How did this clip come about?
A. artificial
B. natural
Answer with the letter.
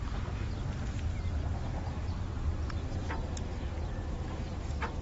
B